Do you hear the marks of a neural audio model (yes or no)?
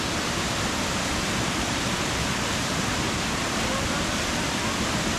yes